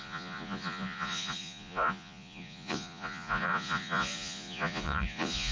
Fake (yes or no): yes